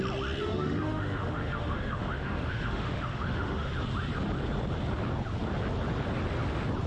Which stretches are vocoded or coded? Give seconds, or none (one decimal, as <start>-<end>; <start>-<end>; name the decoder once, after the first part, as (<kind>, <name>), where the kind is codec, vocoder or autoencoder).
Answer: 0.4-3.7 (autoencoder, DAC-VAE)

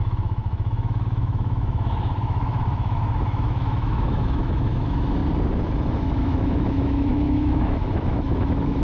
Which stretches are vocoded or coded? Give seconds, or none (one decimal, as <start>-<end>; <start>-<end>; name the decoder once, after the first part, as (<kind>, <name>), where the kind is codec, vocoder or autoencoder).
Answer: 0.0-5.2 (autoencoder, DAC-VAE); 5.9-8.8